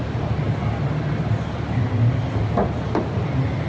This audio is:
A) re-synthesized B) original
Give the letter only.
B